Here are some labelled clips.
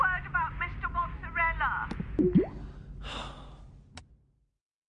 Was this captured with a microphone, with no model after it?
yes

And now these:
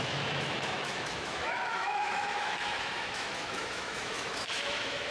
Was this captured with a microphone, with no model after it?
no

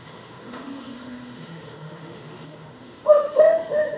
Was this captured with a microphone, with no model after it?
no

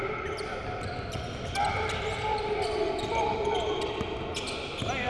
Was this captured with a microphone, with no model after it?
yes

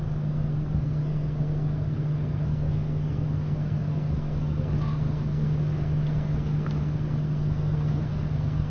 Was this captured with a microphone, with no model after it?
no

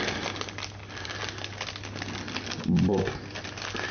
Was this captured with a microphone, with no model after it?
yes